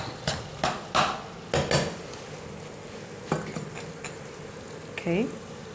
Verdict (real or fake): real